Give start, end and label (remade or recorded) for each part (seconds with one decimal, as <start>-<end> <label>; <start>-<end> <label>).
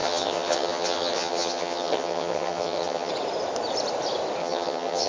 0.0-3.1 remade; 3.1-4.4 recorded; 4.4-5.1 remade